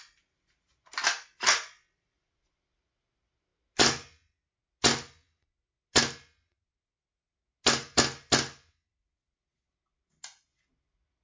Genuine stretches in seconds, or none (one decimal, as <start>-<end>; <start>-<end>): 0.0-11.2